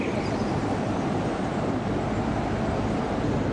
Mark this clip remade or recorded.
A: recorded